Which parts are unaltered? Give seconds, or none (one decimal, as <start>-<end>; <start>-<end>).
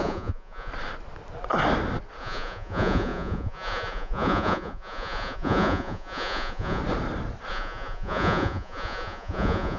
0.7-2.2; 6.8-7.5